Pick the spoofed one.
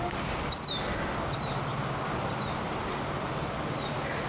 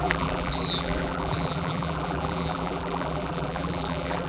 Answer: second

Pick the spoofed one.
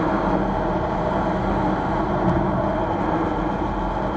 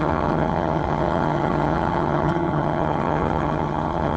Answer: second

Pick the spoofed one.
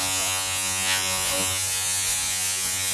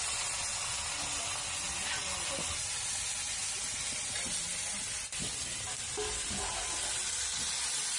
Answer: first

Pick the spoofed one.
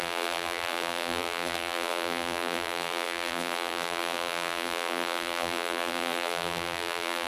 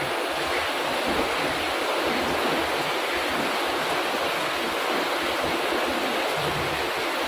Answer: first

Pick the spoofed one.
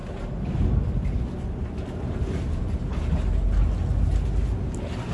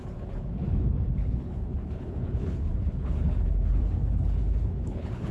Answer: second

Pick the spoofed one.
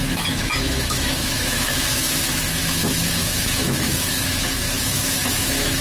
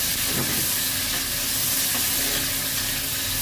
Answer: first